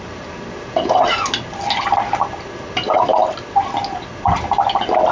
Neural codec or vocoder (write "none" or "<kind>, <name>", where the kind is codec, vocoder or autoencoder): none